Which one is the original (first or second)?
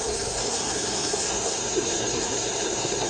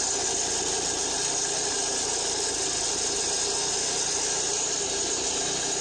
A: second